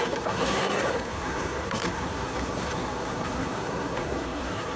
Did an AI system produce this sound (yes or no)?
yes